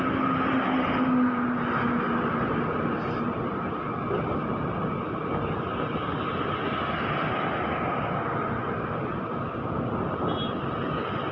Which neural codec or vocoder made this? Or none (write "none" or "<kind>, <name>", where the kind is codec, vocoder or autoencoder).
none